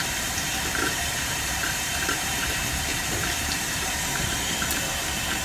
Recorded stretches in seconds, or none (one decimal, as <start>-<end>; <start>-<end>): none